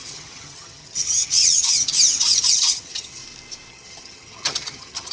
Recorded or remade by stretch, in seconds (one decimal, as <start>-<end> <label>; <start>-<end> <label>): 0.0-1.9 remade; 1.9-2.5 recorded; 2.5-3.2 remade; 3.2-3.7 recorded; 3.7-5.1 remade